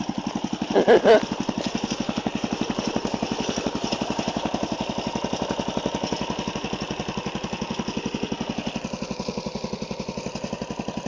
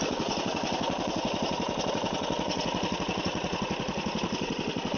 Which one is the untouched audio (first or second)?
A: first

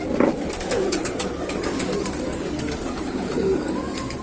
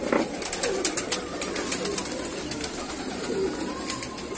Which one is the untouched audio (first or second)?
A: second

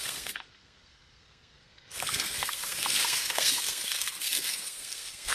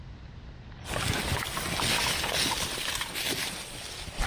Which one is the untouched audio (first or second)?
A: second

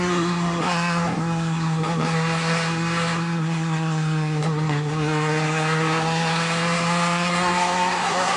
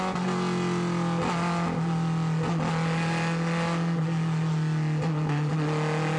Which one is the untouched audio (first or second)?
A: second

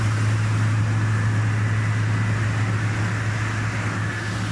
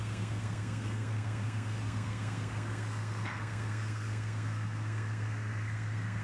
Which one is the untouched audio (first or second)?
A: first